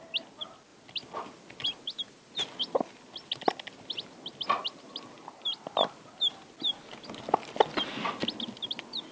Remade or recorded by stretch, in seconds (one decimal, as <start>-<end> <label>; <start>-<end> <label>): 0.0-9.1 recorded